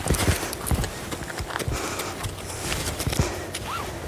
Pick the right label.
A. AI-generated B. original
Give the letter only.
B